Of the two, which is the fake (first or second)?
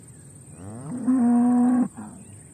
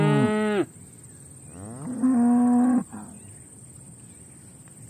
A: first